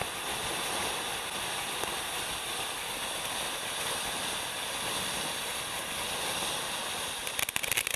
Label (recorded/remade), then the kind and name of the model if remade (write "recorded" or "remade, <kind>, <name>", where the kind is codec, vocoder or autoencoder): recorded